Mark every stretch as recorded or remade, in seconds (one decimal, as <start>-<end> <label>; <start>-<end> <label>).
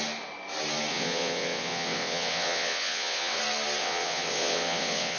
0.0-0.9 recorded; 0.9-3.4 remade; 3.4-3.8 recorded; 3.8-5.2 remade